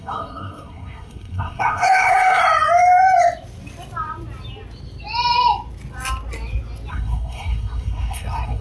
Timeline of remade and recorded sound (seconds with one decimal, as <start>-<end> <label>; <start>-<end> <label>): 0.0-2.4 remade; 2.4-6.9 recorded; 6.9-8.6 remade